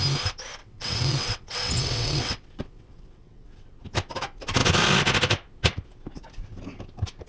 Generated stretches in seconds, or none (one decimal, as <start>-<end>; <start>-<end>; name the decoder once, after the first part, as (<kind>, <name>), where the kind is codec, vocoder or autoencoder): 0.6-3.8 (vocoder, WaveNeXt)